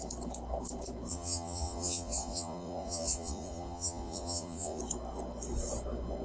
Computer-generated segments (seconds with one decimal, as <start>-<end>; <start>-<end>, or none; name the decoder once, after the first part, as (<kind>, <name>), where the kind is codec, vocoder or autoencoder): 1.1-4.8 (vocoder, Vocos)